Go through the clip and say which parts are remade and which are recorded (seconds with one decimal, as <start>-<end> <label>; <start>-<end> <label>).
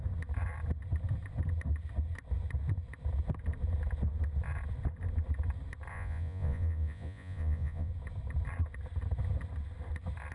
0.0-5.9 recorded; 5.9-7.9 remade; 7.9-10.3 recorded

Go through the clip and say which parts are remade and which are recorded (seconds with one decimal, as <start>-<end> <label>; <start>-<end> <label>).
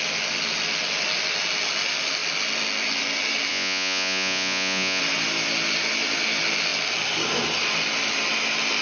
0.0-3.5 recorded; 3.5-5.0 remade; 5.0-8.8 recorded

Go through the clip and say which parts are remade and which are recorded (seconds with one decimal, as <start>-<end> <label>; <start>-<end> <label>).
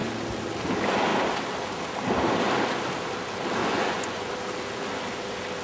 0.0-3.6 recorded; 3.6-4.3 remade; 4.3-5.6 recorded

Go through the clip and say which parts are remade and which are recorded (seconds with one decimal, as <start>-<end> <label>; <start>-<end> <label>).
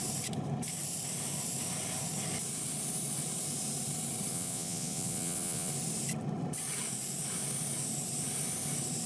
0.0-4.3 recorded; 4.3-5.7 remade; 5.7-9.1 recorded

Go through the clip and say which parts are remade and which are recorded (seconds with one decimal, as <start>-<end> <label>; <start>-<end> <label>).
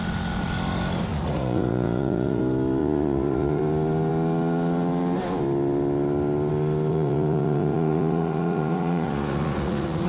0.0-1.1 recorded; 1.1-2.4 remade; 2.4-2.8 recorded; 2.8-3.6 remade; 3.6-6.9 recorded; 6.9-10.1 remade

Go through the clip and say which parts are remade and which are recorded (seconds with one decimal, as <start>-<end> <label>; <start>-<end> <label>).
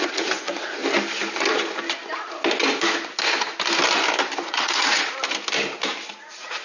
0.0-0.8 remade; 0.8-4.4 recorded; 4.4-5.0 remade; 5.0-6.1 recorded; 6.1-6.6 remade